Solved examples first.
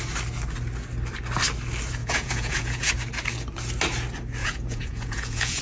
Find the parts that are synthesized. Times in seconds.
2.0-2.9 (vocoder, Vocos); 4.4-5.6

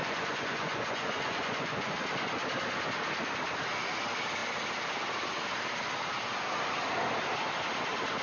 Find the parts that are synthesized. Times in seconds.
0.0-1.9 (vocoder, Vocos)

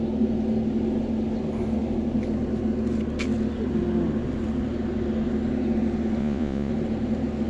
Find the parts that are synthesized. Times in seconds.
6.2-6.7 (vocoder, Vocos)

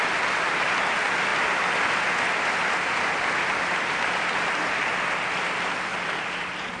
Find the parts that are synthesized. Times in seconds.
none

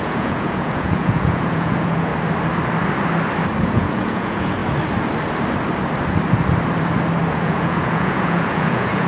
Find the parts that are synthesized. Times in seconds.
0.0-2.1 (vocoder, Vocos); 3.6-4.6; 7.3-9.1

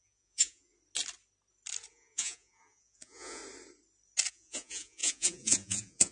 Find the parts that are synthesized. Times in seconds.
0.0-0.7 (vocoder, Vocos); 1.9-3.4; 4.3-6.1

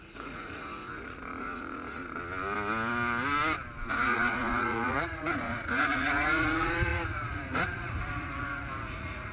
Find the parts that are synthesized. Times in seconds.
0.0-2.0 (vocoder, Vocos); 3.9-9.3

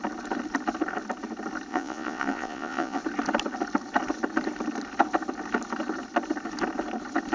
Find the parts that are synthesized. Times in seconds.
1.7-3.0 (vocoder, Vocos)